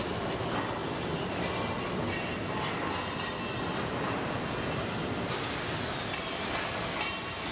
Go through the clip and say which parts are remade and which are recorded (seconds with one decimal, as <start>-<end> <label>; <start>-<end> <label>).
0.0-7.5 recorded